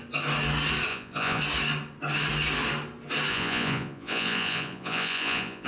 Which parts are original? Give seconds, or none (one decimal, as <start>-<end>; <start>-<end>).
0.0-0.9; 1.4-3.3